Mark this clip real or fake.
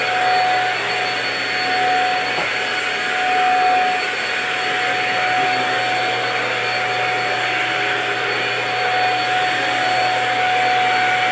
real